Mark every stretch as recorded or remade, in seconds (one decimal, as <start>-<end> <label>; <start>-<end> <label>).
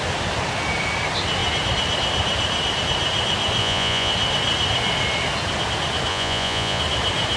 0.0-3.6 recorded; 3.6-4.1 remade; 4.1-6.1 recorded; 6.1-6.8 remade; 6.8-7.4 recorded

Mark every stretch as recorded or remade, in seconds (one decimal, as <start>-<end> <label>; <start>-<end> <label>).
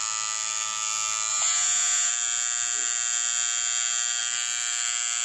0.0-1.3 recorded; 1.3-2.1 remade; 2.1-5.2 recorded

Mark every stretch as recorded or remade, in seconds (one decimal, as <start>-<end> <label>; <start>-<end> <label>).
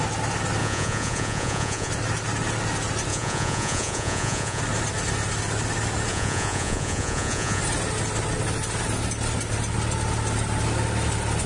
0.0-0.6 recorded; 0.6-1.9 remade; 1.9-3.1 recorded; 3.1-4.6 remade; 4.6-6.1 recorded; 6.1-7.6 remade; 7.6-11.5 recorded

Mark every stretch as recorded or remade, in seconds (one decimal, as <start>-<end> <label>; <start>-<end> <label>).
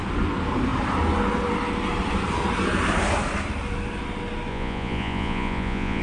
0.0-4.5 recorded; 4.5-6.0 remade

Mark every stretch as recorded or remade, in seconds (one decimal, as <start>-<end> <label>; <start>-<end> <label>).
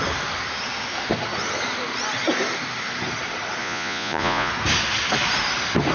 0.0-3.6 recorded; 3.6-4.5 remade; 4.5-5.9 recorded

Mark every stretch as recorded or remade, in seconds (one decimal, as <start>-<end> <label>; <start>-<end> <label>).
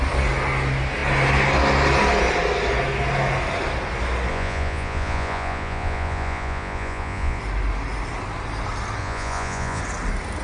0.0-4.3 recorded; 4.3-7.4 remade; 7.4-9.0 recorded; 9.0-9.8 remade; 9.8-10.4 recorded